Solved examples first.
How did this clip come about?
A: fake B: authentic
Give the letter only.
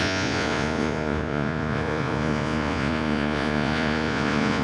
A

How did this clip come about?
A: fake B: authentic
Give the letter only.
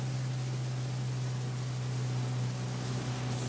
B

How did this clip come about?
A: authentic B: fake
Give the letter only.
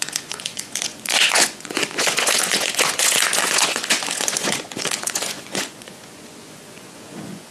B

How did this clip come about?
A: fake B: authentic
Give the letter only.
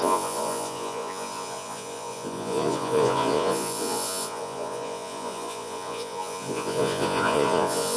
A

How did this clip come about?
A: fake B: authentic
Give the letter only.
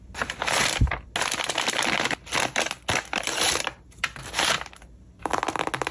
B